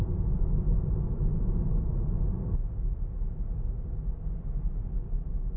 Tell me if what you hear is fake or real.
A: real